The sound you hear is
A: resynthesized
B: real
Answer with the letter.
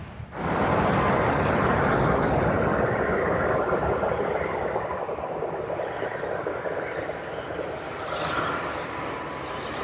B